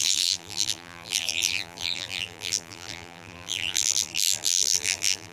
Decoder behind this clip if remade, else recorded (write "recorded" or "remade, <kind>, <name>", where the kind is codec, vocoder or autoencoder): remade, vocoder, BigVGAN v2